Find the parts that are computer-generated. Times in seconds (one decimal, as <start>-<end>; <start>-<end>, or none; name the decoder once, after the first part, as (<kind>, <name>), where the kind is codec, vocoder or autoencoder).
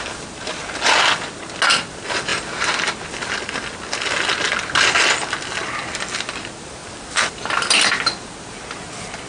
none